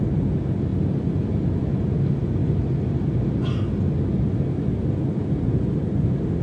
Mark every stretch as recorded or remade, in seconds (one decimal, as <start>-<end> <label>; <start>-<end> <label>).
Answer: 0.0-6.4 recorded

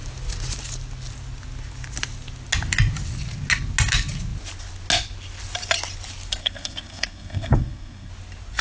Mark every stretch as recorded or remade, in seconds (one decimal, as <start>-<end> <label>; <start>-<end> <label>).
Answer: 0.0-6.4 recorded; 6.4-8.1 remade; 8.1-8.6 recorded

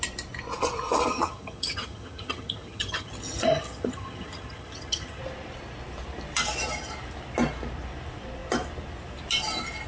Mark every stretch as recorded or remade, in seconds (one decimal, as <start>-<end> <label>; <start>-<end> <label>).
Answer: 0.0-1.1 recorded; 1.1-5.2 remade; 5.2-9.9 recorded

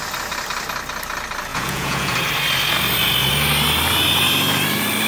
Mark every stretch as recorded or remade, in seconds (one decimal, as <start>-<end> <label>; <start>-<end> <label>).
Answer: 0.0-1.5 recorded; 1.5-2.1 remade; 2.1-5.1 recorded

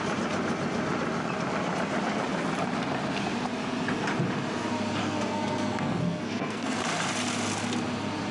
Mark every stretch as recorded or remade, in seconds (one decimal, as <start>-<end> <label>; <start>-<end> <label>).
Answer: 0.0-5.0 recorded; 5.0-6.8 remade; 6.8-8.3 recorded

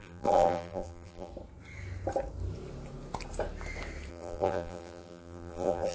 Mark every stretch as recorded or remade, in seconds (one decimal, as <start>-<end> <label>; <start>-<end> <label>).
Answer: 0.0-1.3 remade; 1.3-4.1 recorded; 4.1-5.9 remade